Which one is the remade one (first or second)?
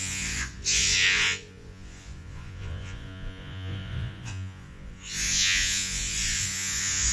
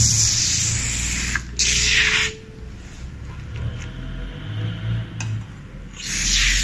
first